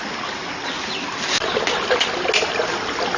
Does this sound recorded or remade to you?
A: recorded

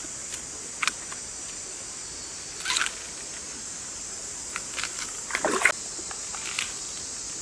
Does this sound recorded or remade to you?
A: recorded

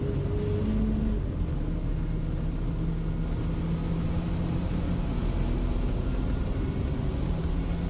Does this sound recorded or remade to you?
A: recorded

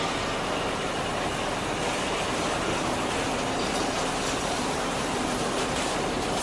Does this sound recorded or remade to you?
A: recorded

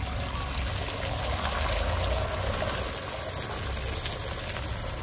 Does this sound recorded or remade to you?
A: recorded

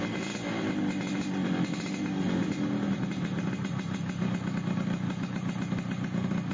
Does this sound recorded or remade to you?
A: recorded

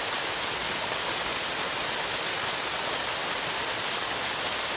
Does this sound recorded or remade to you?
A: recorded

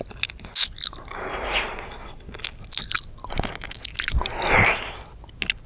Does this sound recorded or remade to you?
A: recorded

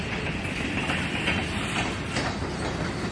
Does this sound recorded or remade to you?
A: recorded